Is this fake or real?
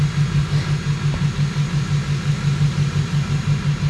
real